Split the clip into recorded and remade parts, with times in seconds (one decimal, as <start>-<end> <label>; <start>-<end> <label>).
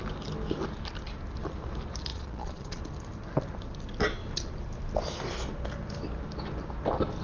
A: 0.0-2.1 recorded; 2.1-2.8 remade; 2.8-7.2 recorded